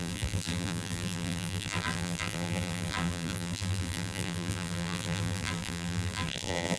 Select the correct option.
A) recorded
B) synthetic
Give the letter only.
B